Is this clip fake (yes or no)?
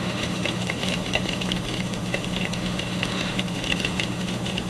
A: yes